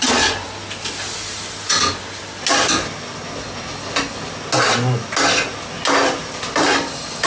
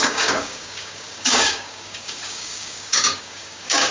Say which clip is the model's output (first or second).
second